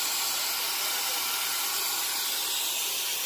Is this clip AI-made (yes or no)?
no